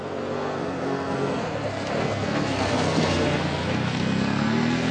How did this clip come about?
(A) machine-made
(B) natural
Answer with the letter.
A